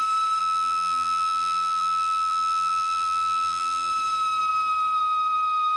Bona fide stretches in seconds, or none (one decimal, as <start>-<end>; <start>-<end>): 0.0-0.4; 3.9-5.8